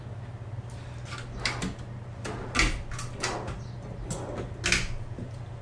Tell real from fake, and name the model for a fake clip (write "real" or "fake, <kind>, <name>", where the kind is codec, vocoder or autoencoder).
real